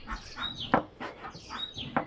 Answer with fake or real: real